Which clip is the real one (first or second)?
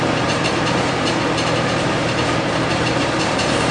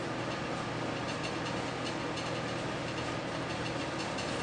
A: second